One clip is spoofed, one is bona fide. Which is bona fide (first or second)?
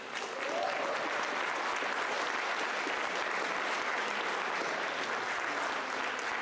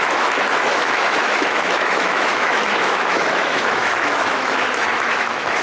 first